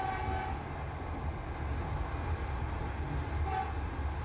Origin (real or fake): real